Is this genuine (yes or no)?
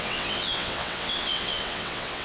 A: no